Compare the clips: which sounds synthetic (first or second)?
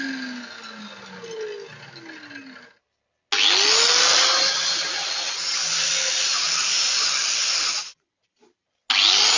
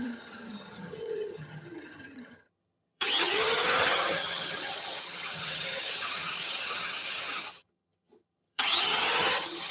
second